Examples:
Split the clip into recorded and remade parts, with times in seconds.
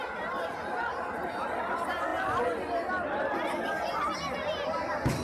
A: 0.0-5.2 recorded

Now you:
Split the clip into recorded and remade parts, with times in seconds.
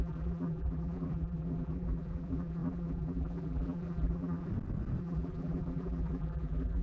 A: 0.0-4.5 remade; 4.5-5.0 recorded; 5.0-6.8 remade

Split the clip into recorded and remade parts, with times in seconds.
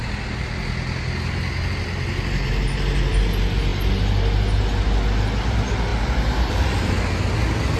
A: 0.0-7.8 recorded